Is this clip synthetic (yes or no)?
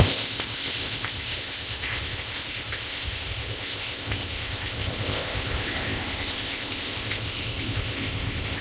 yes